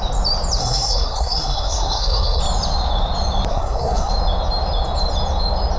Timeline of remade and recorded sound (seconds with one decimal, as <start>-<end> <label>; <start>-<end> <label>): 0.0-0.6 recorded; 0.6-2.4 remade; 2.4-3.5 recorded; 3.5-4.1 remade; 4.1-5.8 recorded